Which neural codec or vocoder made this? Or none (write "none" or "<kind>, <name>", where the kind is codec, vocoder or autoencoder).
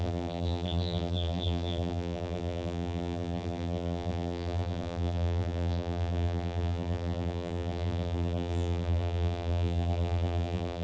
vocoder, BigVGAN v2